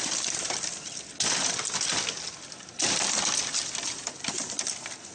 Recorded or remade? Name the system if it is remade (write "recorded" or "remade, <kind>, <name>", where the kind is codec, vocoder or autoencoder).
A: recorded